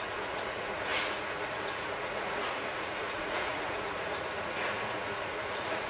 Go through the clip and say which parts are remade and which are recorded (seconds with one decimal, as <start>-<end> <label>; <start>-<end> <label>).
0.0-5.9 remade